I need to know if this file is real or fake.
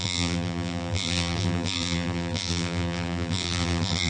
fake